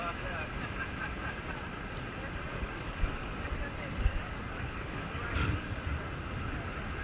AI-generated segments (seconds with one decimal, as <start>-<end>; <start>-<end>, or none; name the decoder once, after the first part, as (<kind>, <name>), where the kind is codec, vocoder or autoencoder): 2.5-5.8 (codec, DAC)